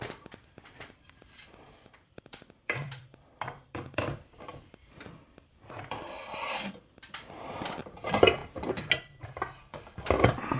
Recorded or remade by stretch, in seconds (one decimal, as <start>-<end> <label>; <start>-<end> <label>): 0.0-8.4 remade; 8.4-10.0 recorded; 10.0-10.6 remade